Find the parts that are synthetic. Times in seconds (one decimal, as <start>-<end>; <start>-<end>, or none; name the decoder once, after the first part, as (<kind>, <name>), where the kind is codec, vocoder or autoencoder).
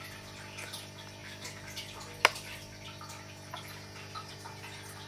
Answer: none